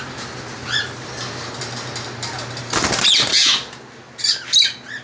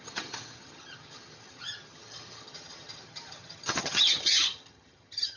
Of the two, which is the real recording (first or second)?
first